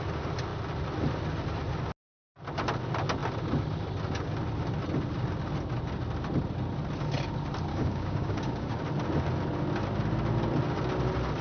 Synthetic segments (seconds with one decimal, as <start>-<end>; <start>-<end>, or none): 7.7-8.8